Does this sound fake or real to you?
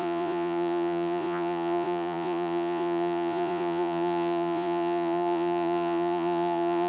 fake